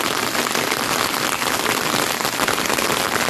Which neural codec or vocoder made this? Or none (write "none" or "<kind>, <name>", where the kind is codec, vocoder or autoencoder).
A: none